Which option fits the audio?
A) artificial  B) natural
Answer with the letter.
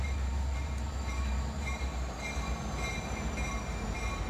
A